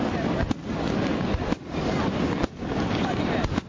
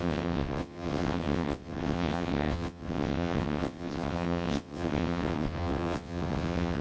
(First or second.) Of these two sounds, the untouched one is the first